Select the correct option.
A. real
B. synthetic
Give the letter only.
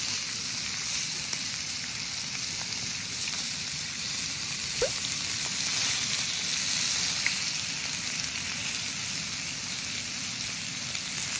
A